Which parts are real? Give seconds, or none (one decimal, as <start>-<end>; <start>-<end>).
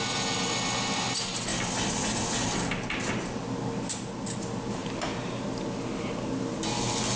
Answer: 0.0-7.2